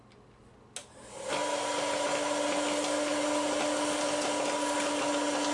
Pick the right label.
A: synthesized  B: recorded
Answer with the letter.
B